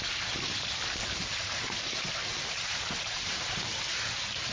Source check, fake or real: fake